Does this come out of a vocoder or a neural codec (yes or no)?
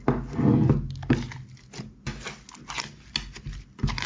no